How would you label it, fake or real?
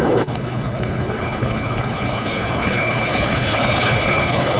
fake